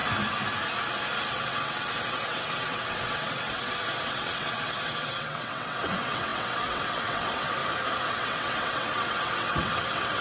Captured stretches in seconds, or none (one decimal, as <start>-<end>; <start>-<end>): 0.0-1.3; 7.6-8.1